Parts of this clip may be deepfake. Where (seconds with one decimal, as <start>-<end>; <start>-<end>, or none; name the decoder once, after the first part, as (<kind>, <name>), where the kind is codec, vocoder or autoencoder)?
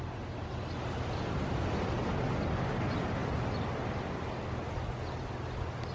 none